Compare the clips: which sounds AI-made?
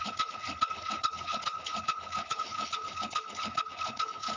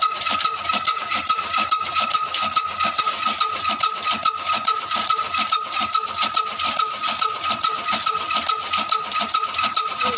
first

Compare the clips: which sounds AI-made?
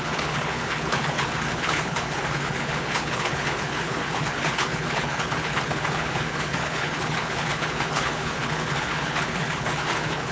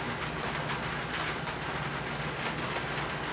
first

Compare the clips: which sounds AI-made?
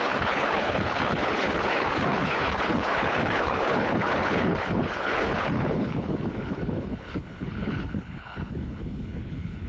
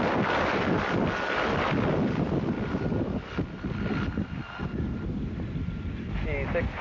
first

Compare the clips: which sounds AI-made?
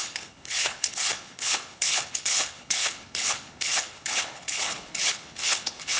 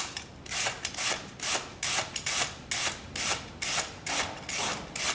first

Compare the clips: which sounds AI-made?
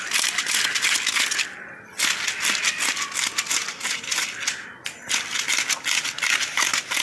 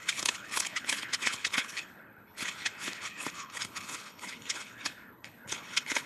second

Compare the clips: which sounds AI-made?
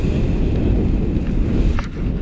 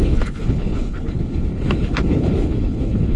second